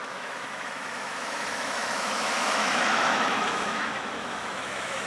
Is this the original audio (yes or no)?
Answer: no